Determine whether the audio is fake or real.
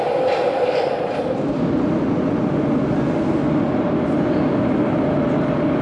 real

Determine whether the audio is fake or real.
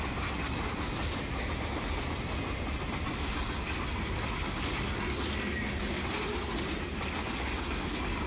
real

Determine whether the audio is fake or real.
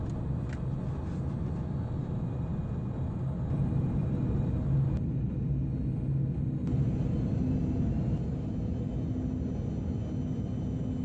real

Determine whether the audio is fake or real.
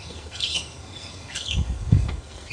fake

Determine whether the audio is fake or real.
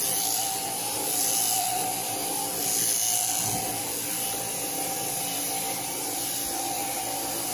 real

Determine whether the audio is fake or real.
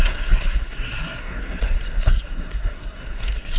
fake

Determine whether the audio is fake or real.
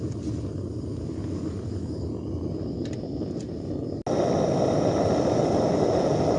real